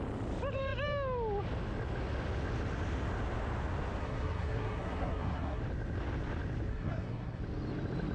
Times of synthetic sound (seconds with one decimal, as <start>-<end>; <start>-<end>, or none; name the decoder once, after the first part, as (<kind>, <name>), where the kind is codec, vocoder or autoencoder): 4.0-5.6 (codec, SNAC); 6.7-7.4